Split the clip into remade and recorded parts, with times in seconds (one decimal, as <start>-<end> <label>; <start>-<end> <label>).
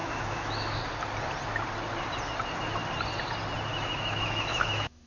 0.0-0.8 remade; 0.8-3.7 recorded; 3.7-5.1 remade